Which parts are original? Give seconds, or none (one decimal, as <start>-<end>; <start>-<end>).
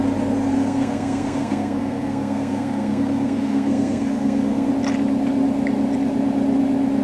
0.0-0.5; 4.7-7.0